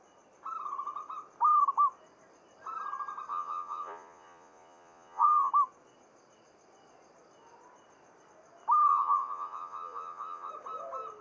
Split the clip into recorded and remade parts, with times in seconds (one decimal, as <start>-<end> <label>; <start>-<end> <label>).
0.0-3.3 recorded; 3.3-5.5 remade; 5.5-8.9 recorded; 8.9-10.5 remade; 10.5-11.2 recorded